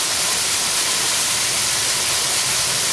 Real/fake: real